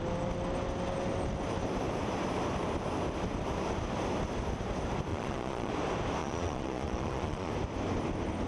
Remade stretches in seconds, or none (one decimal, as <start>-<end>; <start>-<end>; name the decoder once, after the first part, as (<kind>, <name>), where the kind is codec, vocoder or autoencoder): 5.1-5.7 (vocoder, Vocos); 6.2-7.5